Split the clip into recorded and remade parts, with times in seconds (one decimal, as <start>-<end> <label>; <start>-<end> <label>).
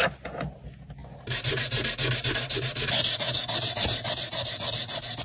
0.0-5.2 recorded